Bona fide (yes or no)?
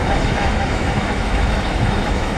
no